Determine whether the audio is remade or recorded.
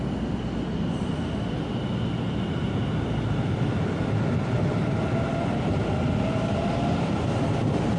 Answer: recorded